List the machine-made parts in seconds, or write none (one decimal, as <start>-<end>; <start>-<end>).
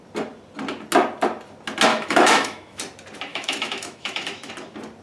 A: 1.9-2.8; 3.3-4.5